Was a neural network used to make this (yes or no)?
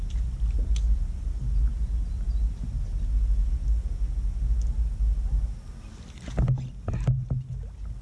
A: no